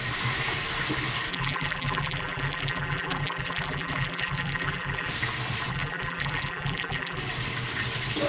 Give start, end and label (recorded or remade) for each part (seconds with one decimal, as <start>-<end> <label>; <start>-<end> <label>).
0.0-1.3 recorded; 1.3-5.1 remade; 5.1-5.7 recorded; 5.7-7.2 remade; 7.2-8.3 recorded